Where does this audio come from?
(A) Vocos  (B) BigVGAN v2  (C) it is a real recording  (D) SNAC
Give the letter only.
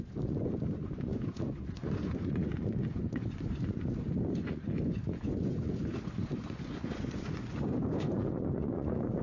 A